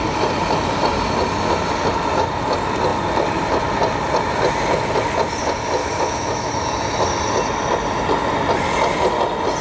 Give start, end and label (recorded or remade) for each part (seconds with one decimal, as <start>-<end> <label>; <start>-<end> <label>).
0.0-5.8 recorded; 5.8-6.5 remade; 6.5-9.6 recorded